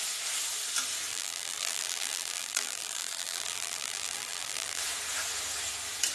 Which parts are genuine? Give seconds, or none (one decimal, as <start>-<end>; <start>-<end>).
0.0-1.1; 4.8-6.1